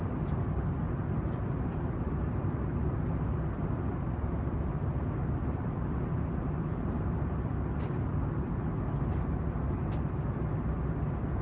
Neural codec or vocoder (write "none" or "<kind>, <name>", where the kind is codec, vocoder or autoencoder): none